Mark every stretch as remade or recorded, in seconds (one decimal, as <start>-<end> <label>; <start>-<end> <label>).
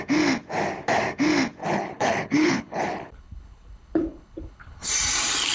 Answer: 0.0-1.6 recorded; 1.6-4.9 remade; 4.9-5.5 recorded